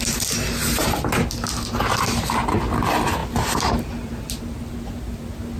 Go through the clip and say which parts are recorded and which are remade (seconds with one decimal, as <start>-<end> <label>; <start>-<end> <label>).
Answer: 0.0-5.6 recorded